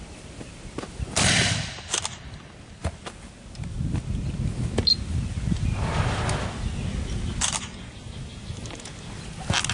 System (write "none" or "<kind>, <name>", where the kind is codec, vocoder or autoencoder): none